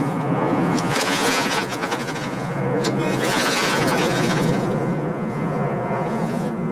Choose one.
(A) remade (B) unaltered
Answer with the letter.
A